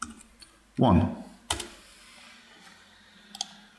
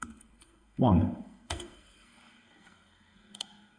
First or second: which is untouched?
first